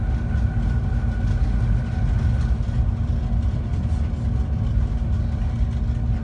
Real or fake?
real